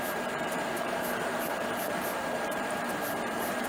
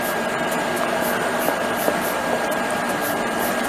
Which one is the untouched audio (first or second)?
second